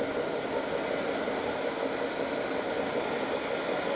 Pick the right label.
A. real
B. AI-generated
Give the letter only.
A